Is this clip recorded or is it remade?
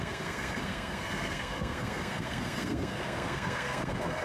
remade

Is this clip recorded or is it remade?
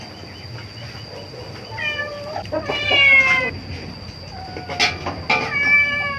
recorded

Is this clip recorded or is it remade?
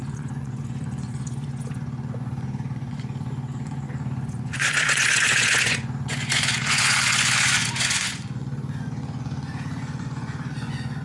remade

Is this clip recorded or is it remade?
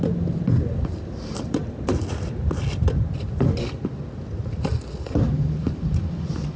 recorded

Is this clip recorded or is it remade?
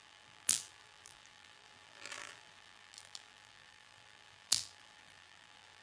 remade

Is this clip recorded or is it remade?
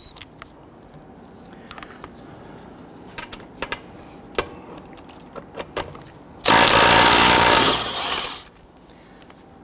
recorded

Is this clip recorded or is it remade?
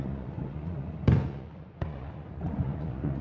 remade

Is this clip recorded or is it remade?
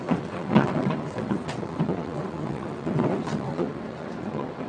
remade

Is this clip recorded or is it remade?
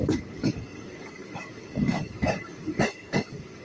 remade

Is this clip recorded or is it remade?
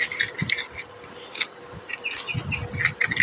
recorded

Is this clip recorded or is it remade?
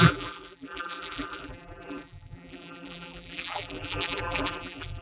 remade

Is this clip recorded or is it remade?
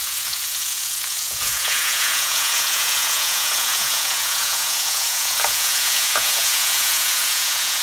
remade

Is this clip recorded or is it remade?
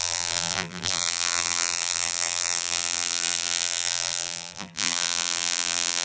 remade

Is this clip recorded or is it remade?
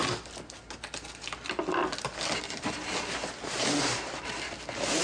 recorded